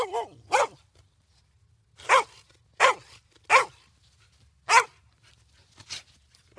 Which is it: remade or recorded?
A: recorded